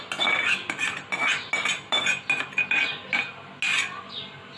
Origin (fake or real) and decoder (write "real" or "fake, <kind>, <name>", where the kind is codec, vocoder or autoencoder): real